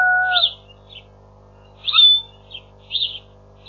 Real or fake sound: real